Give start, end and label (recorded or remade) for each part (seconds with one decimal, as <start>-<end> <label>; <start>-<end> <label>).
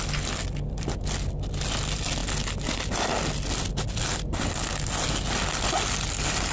0.0-6.5 recorded